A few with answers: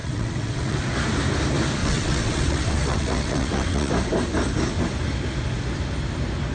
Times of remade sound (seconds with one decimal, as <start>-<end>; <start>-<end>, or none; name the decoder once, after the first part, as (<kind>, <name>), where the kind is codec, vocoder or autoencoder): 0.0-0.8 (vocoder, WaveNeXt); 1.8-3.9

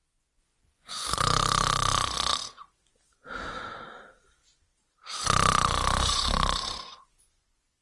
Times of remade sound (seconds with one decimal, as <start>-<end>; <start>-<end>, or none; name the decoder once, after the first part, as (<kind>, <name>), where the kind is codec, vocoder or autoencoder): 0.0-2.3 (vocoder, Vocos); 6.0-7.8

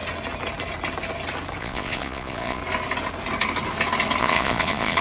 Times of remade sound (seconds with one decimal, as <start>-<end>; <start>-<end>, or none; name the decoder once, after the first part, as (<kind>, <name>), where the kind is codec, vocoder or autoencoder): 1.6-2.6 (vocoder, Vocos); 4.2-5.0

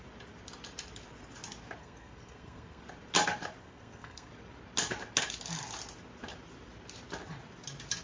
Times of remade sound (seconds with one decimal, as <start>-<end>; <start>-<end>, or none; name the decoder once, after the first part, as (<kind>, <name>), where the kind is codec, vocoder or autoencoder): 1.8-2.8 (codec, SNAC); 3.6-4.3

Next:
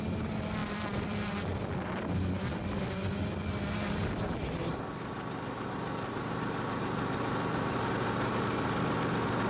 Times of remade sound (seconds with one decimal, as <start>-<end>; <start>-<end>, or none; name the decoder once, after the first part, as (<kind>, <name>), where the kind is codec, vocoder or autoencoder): 0.6-2.4 (vocoder, BigVGAN v2)